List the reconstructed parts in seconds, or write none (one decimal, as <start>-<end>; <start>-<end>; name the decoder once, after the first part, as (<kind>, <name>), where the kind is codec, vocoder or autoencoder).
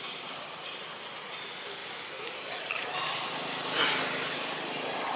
none